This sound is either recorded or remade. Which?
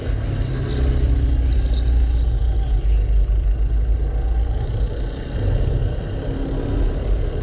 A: recorded